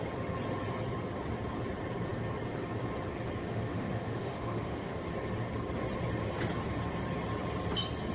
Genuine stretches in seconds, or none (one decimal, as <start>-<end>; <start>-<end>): 0.0-3.5; 5.0-8.1